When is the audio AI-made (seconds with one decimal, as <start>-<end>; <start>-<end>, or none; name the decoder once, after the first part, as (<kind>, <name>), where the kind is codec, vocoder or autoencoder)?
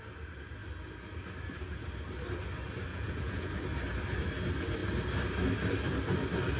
2.9-3.5 (vocoder, Vocos)